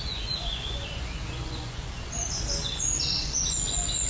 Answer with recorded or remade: remade